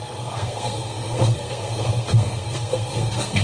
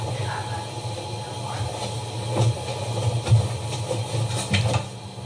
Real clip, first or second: second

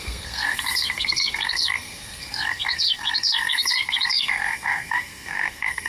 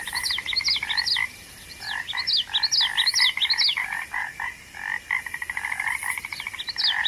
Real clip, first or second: second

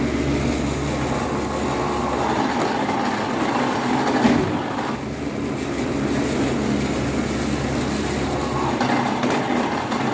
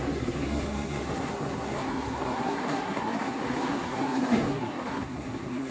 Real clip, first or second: first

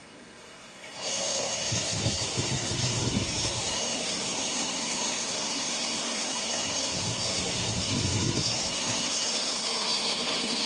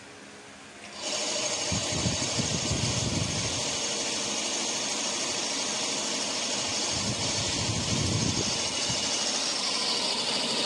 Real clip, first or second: second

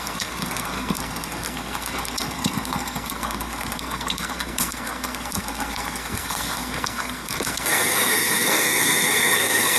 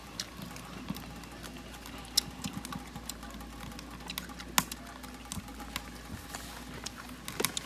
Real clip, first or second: second